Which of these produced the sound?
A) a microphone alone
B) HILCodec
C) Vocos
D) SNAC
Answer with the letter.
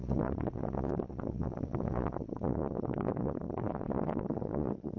C